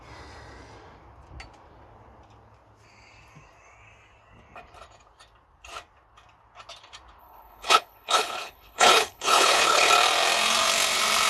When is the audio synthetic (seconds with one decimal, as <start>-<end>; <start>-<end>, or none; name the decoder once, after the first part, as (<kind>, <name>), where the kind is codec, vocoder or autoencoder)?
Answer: 7.2-9.9 (codec, HILCodec)